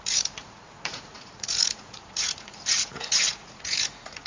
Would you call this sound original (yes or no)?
no